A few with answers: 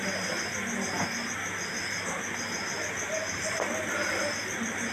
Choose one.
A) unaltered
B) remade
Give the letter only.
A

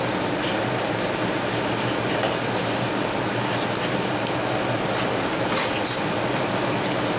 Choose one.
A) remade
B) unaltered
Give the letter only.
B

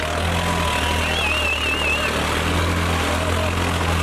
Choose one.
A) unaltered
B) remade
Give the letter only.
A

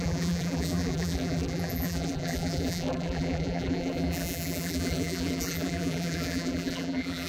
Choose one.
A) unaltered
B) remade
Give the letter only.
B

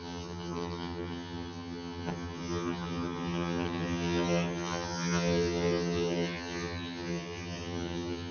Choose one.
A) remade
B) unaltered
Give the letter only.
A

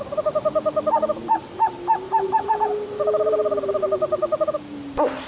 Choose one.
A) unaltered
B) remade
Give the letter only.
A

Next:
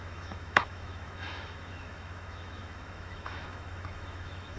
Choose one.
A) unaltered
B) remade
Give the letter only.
B